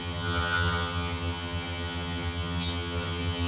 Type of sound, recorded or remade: remade